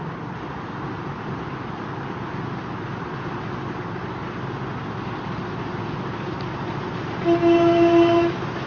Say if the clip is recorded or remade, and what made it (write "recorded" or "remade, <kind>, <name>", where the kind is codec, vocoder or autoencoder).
recorded